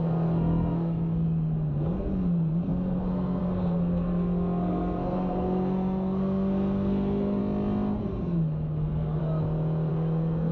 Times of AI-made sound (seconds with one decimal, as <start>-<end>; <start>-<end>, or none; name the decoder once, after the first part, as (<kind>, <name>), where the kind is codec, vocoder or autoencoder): 0.0-7.4 (codec, SNAC); 8.0-9.2; 9.9-10.5